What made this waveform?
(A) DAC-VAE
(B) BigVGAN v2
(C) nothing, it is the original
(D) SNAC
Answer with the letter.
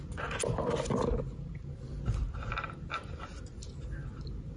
C